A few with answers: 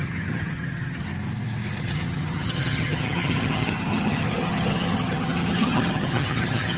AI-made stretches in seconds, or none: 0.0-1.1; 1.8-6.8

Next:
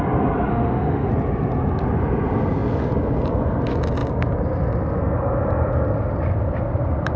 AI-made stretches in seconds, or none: 0.5-1.1

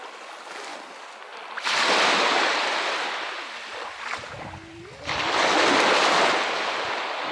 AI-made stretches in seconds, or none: none

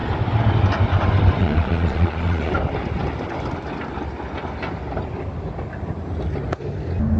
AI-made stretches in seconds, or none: 1.4-2.5

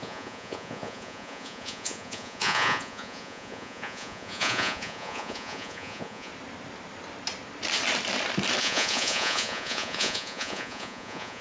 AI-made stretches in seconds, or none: 0.0-6.3; 8.6-11.4

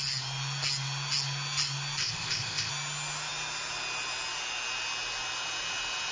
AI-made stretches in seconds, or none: 2.0-2.7

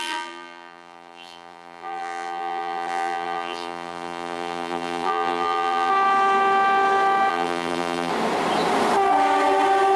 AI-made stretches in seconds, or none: 0.0-5.9; 7.3-8.1